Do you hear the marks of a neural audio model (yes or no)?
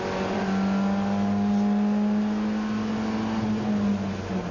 no